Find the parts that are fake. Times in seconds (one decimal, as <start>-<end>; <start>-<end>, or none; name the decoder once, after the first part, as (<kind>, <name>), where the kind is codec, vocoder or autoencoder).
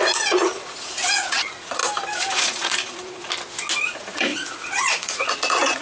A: 0.0-1.8 (vocoder, Vocos); 2.3-3.2; 3.8-5.8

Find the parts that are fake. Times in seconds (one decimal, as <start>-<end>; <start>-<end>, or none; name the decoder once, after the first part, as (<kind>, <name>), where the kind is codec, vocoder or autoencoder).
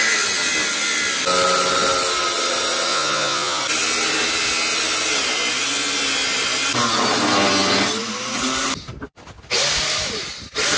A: 2.9-3.6 (vocoder, Vocos)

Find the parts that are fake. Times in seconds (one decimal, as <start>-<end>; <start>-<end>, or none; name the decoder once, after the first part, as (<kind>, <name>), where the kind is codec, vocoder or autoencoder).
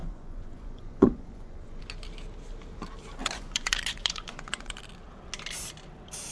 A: 0.0-1.8 (vocoder, Vocos); 3.2-4.8